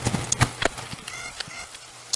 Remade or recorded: recorded